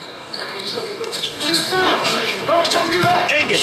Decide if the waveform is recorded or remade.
remade